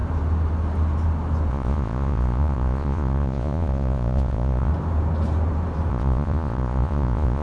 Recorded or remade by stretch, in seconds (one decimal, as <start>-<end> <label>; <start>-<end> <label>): 0.0-1.5 recorded; 1.5-4.7 remade; 4.7-5.9 recorded; 5.9-7.4 remade